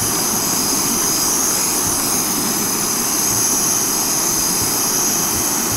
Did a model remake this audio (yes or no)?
no